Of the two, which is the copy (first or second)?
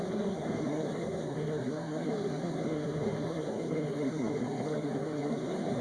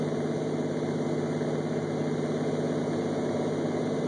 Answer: first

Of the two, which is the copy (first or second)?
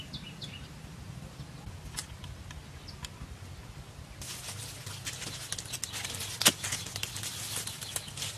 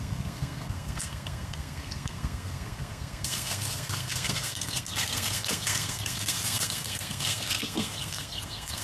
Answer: second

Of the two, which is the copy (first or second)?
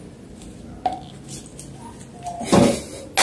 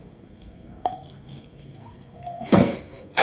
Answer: second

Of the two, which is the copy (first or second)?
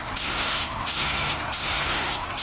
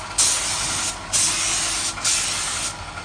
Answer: first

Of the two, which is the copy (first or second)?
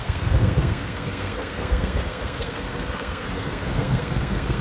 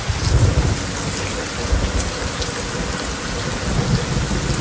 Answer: first